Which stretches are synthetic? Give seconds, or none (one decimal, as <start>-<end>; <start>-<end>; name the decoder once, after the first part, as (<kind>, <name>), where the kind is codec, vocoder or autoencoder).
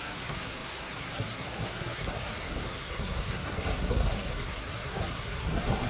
0.0-5.9 (codec, SNAC)